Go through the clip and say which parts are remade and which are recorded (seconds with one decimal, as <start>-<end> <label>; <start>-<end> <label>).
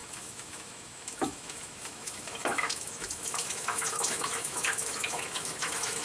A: 0.0-6.0 remade